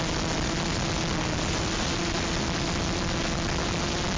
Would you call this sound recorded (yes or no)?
yes